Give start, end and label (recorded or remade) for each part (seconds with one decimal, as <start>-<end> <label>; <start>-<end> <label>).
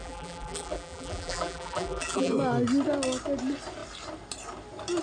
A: 0.0-2.3 remade; 2.3-5.0 recorded